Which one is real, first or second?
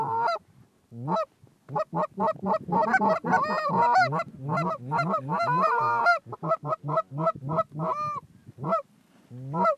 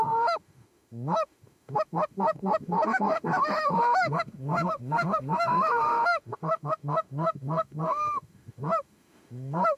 first